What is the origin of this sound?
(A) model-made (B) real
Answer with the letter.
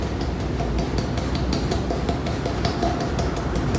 B